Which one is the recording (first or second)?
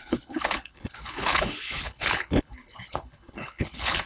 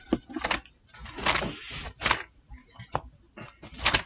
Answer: second